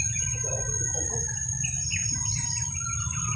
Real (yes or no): yes